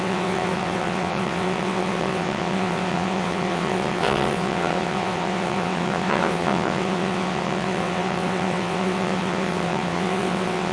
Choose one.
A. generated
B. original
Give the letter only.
A